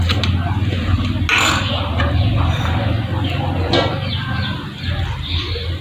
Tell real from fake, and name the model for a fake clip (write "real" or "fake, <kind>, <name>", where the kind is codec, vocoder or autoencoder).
real